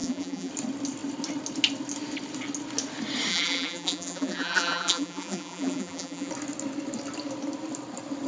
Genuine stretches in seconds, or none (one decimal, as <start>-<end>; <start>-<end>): 0.5-3.3; 6.3-8.3